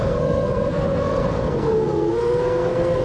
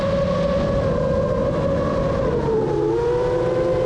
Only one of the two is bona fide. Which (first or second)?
second